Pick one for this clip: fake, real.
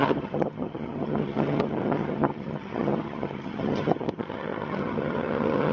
fake